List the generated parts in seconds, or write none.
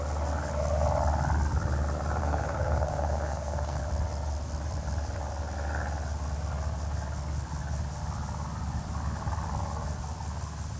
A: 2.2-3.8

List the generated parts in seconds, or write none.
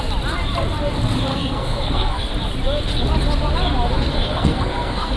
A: 1.3-2.3; 4.1-5.2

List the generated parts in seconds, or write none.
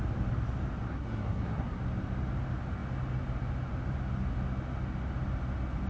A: 0.9-1.8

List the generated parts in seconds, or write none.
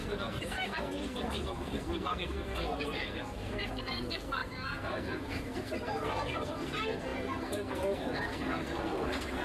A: 0.0-9.4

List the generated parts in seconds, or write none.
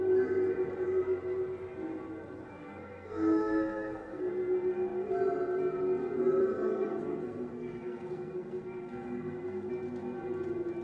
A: 2.6-4.3; 6.4-9.7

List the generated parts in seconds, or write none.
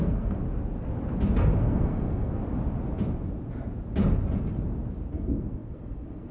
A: 0.0-0.4; 1.6-2.4; 5.1-6.3